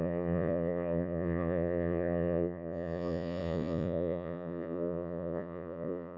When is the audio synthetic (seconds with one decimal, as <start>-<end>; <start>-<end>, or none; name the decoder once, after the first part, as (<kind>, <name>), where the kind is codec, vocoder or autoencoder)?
0.0-6.2 (vocoder, Vocos)